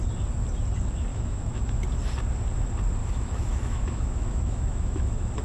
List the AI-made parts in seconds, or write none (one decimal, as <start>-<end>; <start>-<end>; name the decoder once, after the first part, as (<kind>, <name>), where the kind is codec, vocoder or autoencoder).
1.1-1.8 (autoencoder, DAC-VAE); 3.0-5.4